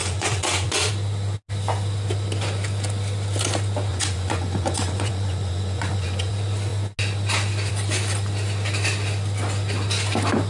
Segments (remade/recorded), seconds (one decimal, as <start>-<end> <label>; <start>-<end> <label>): 0.0-0.9 remade; 0.9-3.9 recorded; 3.9-6.3 remade; 6.3-10.5 recorded